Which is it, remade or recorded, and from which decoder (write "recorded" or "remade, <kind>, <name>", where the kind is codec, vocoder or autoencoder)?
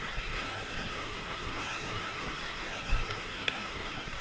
remade, codec, SNAC